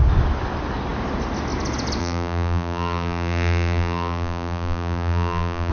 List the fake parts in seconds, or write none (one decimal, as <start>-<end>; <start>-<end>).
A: 2.0-5.7